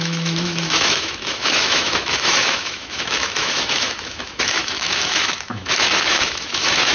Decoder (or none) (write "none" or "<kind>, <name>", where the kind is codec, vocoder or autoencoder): autoencoder, DAC-VAE